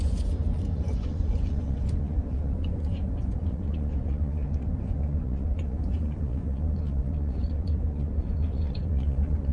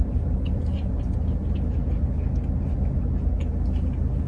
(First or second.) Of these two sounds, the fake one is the first